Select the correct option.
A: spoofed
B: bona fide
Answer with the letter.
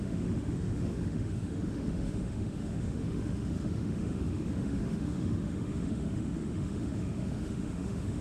A